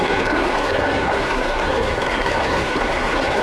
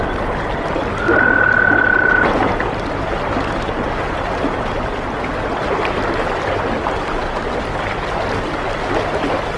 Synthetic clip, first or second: first